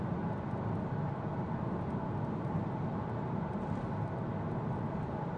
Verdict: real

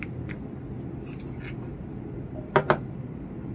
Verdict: real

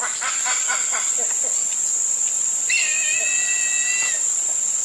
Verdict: real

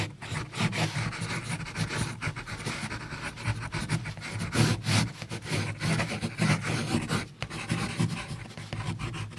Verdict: real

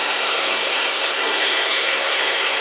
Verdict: fake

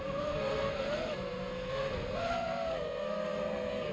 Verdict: fake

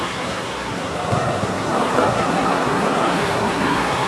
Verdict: fake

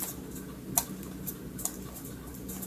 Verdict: real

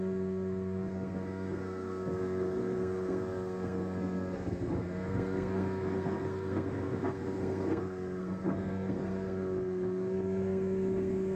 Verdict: fake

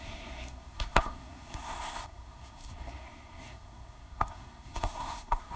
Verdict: fake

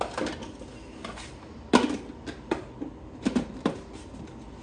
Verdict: real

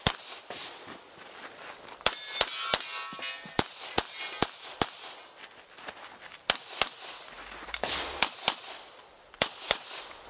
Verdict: real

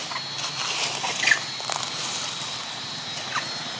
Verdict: real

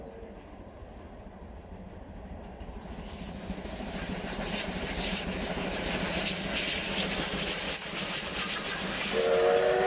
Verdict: real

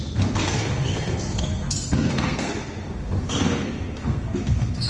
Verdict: fake